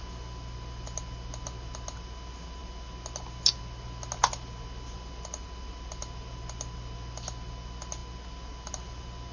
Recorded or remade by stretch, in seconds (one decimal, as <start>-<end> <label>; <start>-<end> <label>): 0.0-9.3 recorded